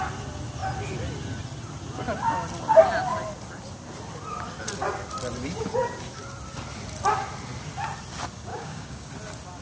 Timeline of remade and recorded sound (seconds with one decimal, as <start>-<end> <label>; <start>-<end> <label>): 0.0-8.5 recorded; 8.5-9.1 remade; 9.1-9.6 recorded